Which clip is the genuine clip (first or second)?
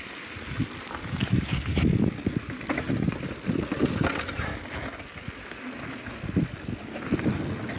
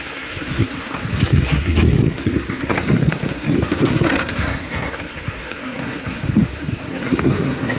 first